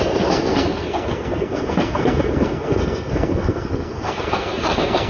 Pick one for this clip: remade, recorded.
remade